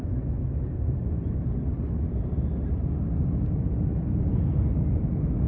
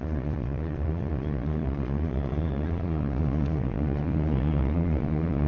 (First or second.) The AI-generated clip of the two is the second